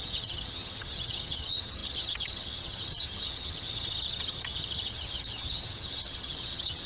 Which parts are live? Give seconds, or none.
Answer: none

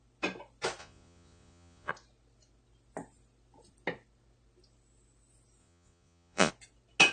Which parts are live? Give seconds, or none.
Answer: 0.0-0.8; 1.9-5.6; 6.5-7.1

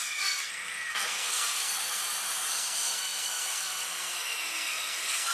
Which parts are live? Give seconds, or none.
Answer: 2.0-2.5